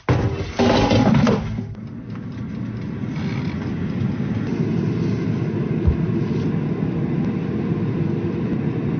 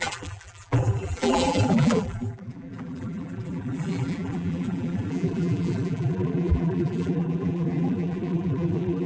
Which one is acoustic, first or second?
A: first